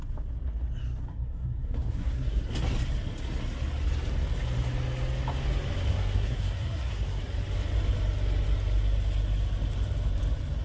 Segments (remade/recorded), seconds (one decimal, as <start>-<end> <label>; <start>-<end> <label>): 0.0-1.1 recorded; 1.1-2.4 remade; 2.4-5.9 recorded; 5.9-7.2 remade; 7.2-10.6 recorded